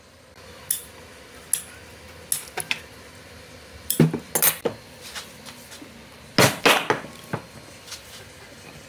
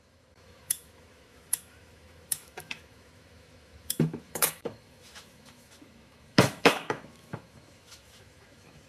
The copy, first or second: second